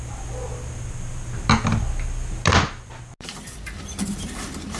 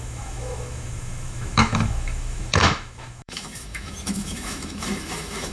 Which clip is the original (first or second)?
first